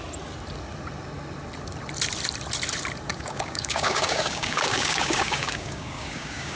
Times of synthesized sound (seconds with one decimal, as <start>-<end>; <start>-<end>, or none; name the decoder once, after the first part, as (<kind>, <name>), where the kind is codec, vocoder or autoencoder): 3.1-6.6 (codec, DAC)